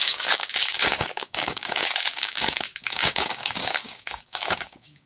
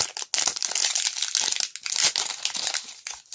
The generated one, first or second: first